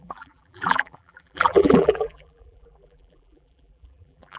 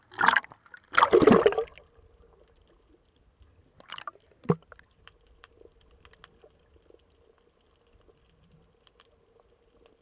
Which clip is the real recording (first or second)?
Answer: second